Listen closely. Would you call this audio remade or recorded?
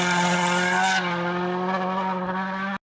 recorded